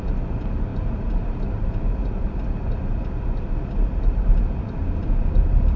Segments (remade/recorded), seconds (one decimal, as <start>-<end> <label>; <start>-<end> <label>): 0.0-5.8 recorded